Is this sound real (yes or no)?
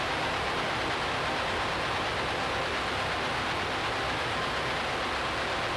yes